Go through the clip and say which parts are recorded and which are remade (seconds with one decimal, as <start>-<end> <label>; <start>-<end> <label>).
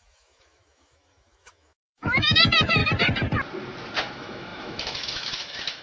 0.0-2.8 remade; 2.8-4.0 recorded; 4.0-5.8 remade